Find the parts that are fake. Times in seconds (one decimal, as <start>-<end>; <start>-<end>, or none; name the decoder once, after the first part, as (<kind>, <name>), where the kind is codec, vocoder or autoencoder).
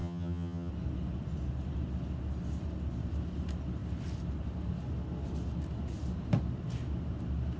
0.0-0.7 (vocoder, HiFi-GAN)